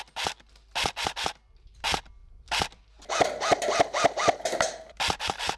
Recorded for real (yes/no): yes